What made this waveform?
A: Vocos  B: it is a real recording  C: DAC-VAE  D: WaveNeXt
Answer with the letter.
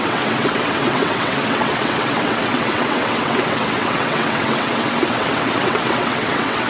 D